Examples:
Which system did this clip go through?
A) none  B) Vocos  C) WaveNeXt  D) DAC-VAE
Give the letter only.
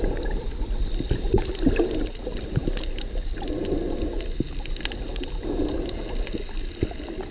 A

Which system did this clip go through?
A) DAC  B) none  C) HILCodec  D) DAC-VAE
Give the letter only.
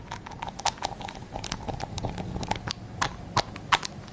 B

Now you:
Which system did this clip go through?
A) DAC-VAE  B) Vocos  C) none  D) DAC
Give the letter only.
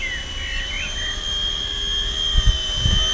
C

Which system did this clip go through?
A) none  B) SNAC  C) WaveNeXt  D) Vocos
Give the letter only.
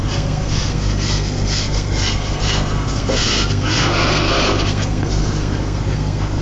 B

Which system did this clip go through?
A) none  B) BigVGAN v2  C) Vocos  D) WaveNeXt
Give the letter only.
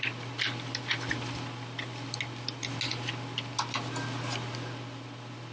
A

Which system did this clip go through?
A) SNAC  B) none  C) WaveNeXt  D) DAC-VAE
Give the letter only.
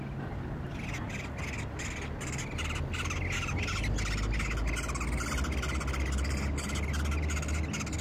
B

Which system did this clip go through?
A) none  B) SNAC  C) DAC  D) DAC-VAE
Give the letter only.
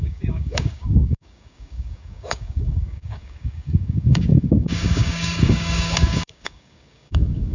C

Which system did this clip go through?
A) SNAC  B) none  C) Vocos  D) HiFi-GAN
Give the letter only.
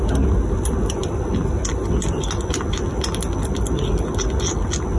B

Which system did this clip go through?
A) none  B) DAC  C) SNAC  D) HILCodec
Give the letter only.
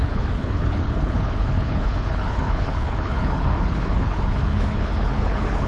D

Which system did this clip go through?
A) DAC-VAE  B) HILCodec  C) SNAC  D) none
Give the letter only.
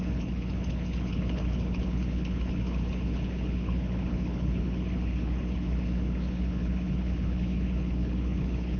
B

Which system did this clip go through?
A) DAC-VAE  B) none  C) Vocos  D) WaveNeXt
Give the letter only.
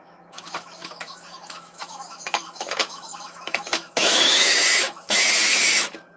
A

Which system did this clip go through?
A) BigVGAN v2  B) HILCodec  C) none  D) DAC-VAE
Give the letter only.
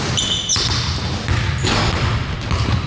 C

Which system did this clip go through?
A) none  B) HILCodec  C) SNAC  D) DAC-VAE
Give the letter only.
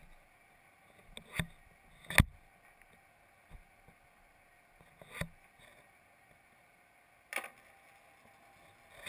A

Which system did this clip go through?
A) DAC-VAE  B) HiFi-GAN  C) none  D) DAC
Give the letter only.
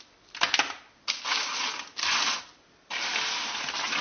C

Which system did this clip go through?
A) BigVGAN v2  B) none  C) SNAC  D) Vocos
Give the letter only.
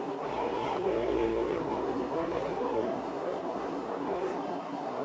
C